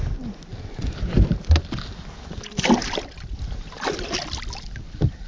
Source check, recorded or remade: recorded